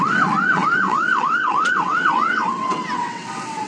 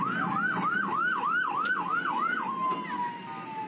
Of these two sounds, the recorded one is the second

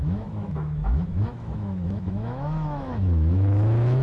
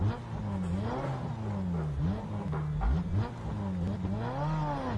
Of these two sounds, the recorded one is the second